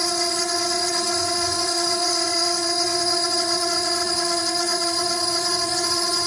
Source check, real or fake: fake